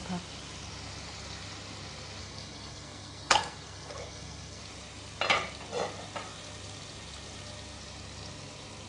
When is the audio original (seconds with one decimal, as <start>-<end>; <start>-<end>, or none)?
0.0-2.2; 4.6-8.9